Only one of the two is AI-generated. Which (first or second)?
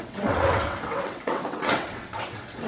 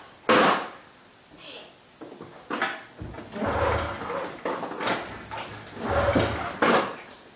first